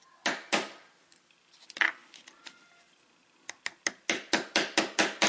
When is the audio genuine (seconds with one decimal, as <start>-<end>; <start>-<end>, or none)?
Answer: 0.0-5.3